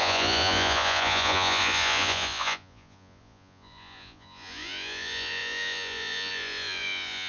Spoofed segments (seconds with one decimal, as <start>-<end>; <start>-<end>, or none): 0.0-7.3